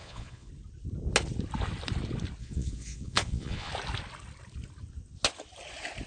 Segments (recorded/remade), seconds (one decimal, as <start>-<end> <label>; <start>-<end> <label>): 0.0-0.5 remade; 0.5-2.4 recorded; 2.4-3.7 remade; 3.7-6.1 recorded